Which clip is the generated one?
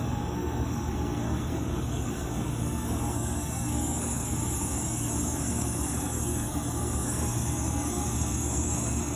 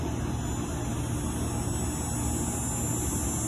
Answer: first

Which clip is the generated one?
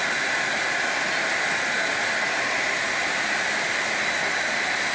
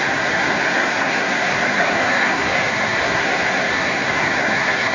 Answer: second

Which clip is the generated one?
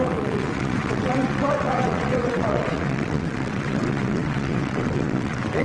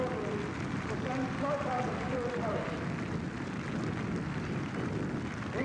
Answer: first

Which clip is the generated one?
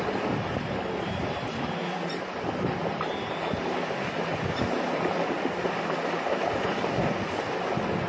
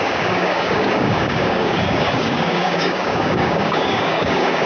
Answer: second